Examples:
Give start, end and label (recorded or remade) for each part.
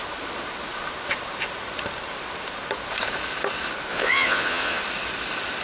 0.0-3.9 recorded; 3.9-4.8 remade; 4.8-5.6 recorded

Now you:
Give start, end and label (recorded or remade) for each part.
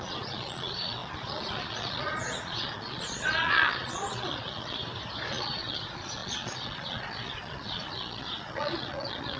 0.0-4.8 remade; 4.8-5.3 recorded; 5.3-9.4 remade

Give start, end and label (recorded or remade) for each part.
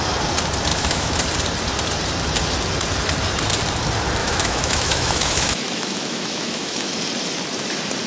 0.0-0.7 recorded; 0.7-1.2 remade; 1.2-4.2 recorded; 4.2-6.9 remade; 6.9-8.1 recorded